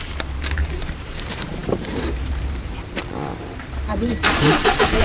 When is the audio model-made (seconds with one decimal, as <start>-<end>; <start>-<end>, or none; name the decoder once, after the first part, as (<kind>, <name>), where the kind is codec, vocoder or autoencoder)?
0.0-5.0 (vocoder, BigVGAN v2)